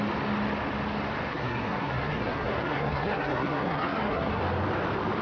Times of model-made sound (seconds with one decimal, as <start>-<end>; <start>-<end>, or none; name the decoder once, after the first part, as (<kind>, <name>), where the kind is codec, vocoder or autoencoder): 1.3-4.4 (codec, SNAC)